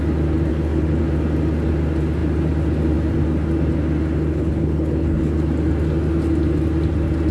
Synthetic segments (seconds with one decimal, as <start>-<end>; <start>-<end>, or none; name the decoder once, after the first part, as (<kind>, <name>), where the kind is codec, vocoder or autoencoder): 0.5-1.0 (codec, HILCodec); 4.3-5.3